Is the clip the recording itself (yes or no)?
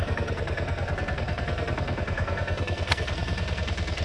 no